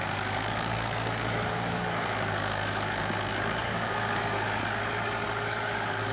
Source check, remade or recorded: remade